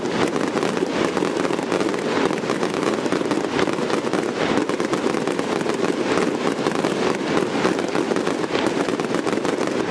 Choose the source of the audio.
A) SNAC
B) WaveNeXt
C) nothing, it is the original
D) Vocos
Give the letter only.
C